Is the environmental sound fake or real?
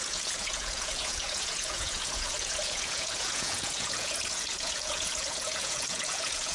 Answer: fake